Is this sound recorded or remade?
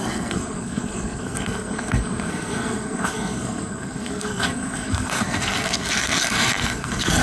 remade